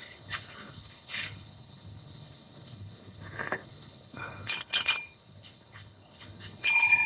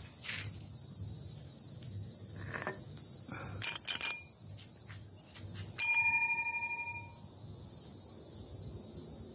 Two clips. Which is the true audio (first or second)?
second